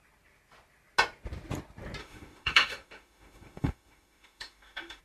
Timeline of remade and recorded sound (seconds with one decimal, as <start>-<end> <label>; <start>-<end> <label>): 0.0-2.0 recorded; 2.0-5.0 remade